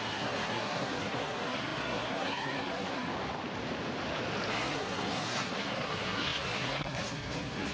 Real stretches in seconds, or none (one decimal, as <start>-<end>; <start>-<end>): 3.1-4.5

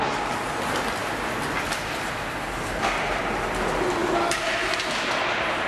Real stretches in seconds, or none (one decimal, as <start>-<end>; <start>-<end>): 0.0-4.0; 4.8-5.7